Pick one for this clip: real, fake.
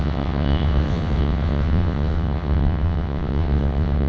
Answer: fake